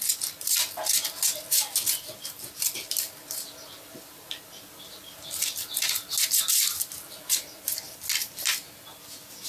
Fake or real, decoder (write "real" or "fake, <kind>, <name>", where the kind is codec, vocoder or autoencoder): real